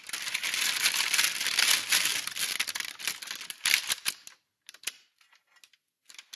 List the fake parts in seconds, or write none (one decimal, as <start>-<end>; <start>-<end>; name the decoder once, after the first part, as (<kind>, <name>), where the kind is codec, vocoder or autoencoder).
none